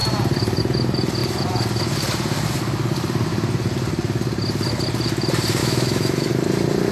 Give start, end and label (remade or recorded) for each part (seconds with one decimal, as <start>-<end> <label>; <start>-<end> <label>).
0.0-5.6 recorded; 5.6-6.3 remade; 6.3-6.9 recorded